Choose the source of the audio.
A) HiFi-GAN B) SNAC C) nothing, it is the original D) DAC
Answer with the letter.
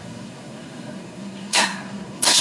B